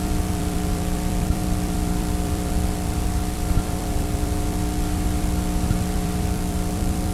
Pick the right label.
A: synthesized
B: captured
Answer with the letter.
A